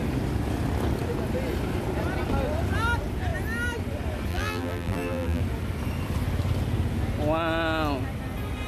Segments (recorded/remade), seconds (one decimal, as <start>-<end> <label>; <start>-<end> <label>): 0.0-4.3 recorded; 4.3-5.4 remade; 5.4-8.7 recorded